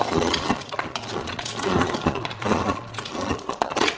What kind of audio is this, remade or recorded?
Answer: remade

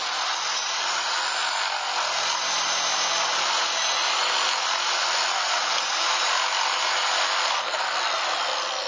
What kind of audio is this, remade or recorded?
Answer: recorded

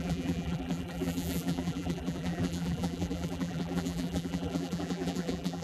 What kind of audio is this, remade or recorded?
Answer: remade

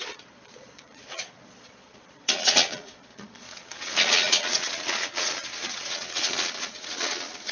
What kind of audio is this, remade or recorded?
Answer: remade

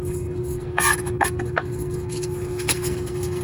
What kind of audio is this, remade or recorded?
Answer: remade